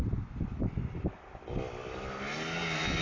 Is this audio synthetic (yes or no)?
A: no